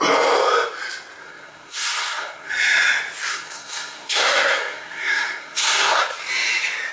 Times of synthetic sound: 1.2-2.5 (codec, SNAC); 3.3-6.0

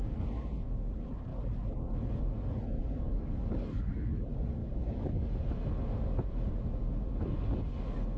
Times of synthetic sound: 2.8-3.9 (codec, DAC); 4.6-5.3

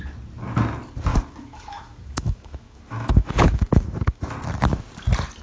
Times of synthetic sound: 1.1-4.3 (autoencoder, DAC-VAE)

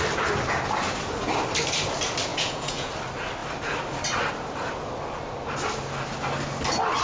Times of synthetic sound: 2.3-2.9 (vocoder, Vocos)